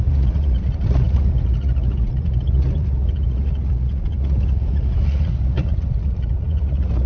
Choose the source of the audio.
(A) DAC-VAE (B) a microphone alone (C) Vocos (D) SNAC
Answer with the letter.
C